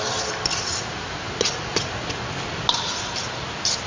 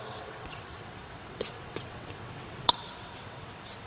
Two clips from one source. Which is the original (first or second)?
first